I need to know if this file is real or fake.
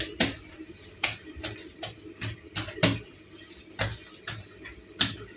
real